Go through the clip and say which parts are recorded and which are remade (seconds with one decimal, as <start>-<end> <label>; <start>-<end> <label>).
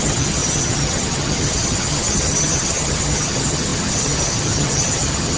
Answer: 0.0-5.4 remade